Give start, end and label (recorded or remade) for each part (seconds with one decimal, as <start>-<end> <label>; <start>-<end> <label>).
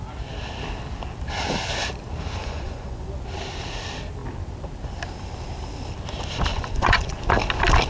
0.0-2.4 recorded; 2.4-3.1 remade; 3.1-6.5 recorded; 6.5-7.2 remade; 7.2-7.9 recorded